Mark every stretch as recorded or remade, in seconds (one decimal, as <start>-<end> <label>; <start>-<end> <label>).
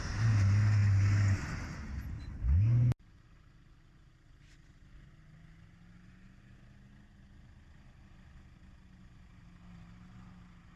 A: 0.0-10.8 recorded